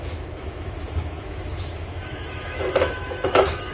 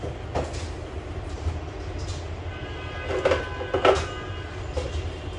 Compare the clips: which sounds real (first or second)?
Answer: second